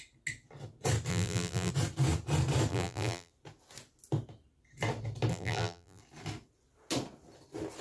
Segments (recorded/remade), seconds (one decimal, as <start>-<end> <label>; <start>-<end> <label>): 0.0-1.1 recorded; 1.1-1.7 remade; 1.7-2.7 recorded; 2.7-3.3 remade; 3.3-5.3 recorded; 5.3-6.0 remade; 6.0-7.8 recorded